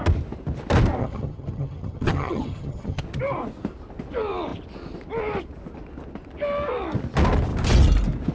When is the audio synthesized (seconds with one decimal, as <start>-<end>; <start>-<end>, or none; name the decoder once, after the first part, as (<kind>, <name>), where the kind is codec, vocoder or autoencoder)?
1.0-3.0 (vocoder, HiFi-GAN)